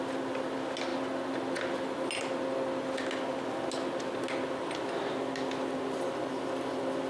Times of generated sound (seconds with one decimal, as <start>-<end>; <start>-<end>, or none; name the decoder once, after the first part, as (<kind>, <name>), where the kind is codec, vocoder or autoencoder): none